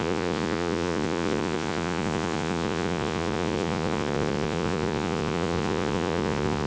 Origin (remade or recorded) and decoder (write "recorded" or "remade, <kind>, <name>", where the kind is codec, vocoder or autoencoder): remade, vocoder, Vocos